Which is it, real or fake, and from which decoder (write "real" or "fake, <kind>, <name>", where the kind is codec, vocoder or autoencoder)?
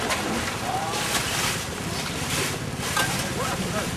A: fake, vocoder, BigVGAN v2